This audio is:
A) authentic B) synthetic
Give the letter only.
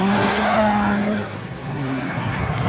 B